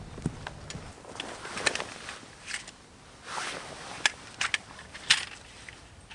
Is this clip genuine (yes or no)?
yes